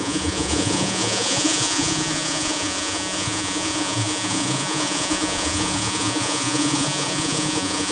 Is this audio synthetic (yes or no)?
yes